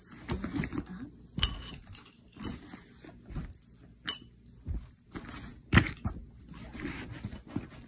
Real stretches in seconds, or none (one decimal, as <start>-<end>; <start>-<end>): 0.0-7.9